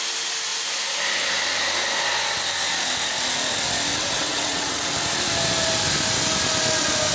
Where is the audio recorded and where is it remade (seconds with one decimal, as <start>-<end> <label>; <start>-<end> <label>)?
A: 0.0-3.9 recorded; 3.9-4.9 remade; 4.9-7.1 recorded